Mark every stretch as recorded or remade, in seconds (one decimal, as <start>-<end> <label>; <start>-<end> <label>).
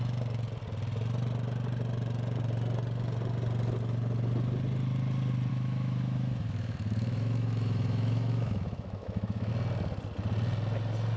0.0-5.5 recorded; 5.5-9.5 remade; 9.5-11.2 recorded